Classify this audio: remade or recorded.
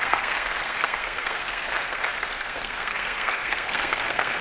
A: remade